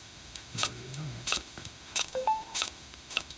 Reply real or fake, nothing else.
fake